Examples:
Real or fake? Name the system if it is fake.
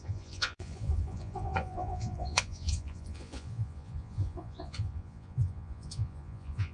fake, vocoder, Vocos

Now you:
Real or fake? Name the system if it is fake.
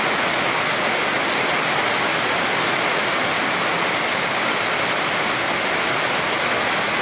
real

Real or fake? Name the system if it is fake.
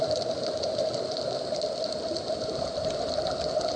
real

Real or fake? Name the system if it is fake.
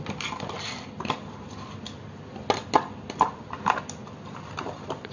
real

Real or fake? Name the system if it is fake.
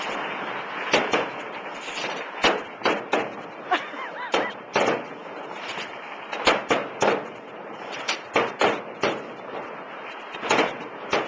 real